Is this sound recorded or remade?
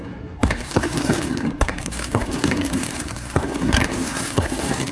remade